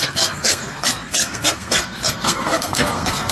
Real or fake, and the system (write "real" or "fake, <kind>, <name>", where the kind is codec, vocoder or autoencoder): fake, codec, SNAC